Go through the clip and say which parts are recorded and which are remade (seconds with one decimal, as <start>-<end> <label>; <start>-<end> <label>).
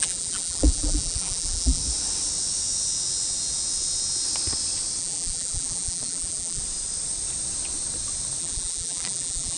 0.0-1.8 remade; 1.8-5.0 recorded; 5.0-6.6 remade; 6.6-8.4 recorded; 8.4-9.6 remade